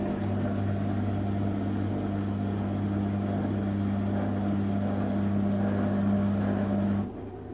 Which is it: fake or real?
real